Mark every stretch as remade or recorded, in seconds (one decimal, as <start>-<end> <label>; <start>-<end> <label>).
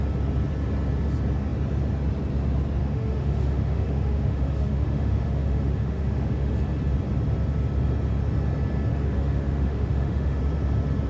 0.0-2.8 recorded; 2.8-6.5 remade; 6.5-8.9 recorded; 8.9-10.4 remade; 10.4-11.1 recorded